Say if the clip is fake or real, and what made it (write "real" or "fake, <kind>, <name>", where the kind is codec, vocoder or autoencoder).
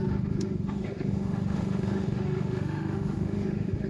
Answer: fake, autoencoder, DAC-VAE